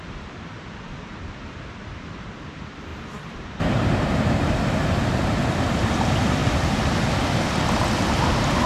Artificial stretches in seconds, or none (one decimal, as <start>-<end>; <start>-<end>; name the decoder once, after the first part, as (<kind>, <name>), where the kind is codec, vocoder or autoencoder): 2.9-5.1 (vocoder, BigVGAN v2)